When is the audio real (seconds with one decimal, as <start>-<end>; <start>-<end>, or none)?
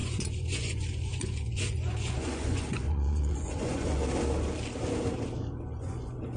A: 4.0-5.6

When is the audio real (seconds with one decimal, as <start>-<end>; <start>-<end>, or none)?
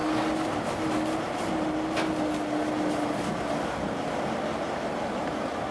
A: 0.0-5.7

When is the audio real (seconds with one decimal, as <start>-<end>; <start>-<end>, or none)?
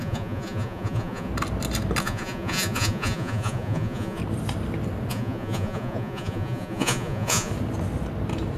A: 1.3-2.0; 4.2-5.1; 7.5-8.6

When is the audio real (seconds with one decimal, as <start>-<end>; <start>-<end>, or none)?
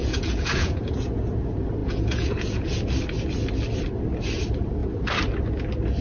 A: 1.1-1.8; 2.8-6.0